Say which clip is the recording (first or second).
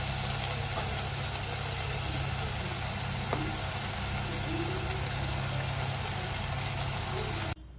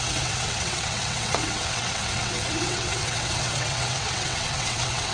first